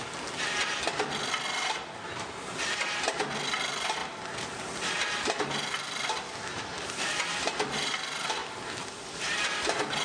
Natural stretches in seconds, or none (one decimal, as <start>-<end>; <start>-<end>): 0.0-10.0